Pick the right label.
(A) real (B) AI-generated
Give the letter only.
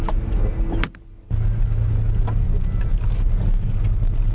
A